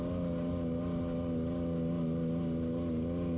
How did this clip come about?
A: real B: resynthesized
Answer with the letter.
A